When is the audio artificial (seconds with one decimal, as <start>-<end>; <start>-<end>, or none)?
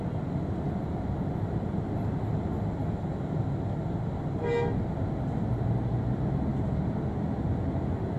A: 6.5-7.1